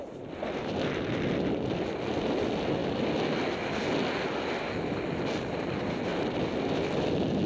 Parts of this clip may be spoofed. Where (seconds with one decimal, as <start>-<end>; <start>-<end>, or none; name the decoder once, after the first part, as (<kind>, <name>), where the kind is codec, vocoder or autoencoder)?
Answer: none